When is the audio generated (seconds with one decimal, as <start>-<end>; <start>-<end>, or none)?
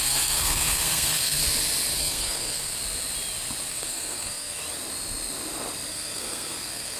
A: 0.0-1.4; 2.0-2.8; 3.7-4.6; 5.9-7.0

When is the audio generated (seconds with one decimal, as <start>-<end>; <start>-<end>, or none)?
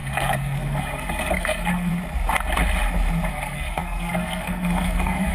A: 0.0-1.9; 3.3-5.3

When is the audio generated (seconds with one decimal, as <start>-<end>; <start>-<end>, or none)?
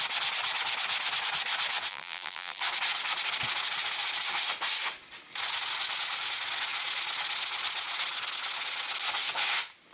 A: 1.9-2.6